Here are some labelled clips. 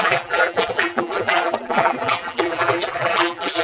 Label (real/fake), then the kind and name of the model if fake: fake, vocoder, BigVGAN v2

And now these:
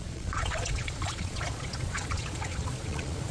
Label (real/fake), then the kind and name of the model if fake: fake, vocoder, Vocos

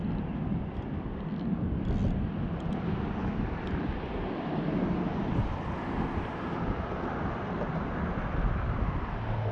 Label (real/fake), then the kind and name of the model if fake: real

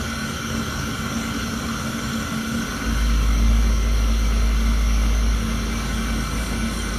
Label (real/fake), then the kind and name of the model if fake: fake, codec, DAC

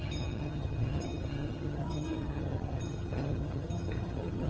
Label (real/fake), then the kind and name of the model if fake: fake, vocoder, HiFi-GAN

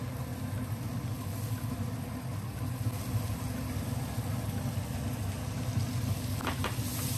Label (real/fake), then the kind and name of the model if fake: real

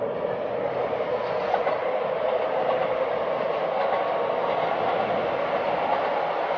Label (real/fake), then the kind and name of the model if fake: real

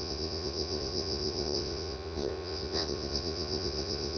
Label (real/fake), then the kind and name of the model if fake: fake, vocoder, Vocos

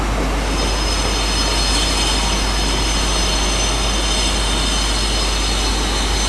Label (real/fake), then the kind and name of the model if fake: real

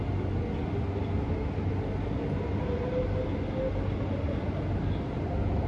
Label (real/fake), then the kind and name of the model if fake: real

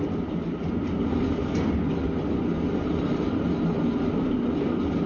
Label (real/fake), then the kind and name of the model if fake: real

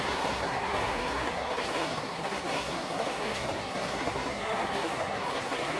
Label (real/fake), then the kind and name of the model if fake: fake, codec, SNAC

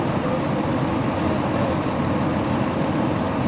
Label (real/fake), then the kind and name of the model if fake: real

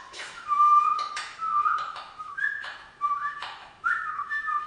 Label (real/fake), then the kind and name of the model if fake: fake, autoencoder, DAC-VAE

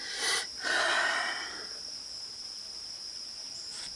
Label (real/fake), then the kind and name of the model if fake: fake, vocoder, BigVGAN v2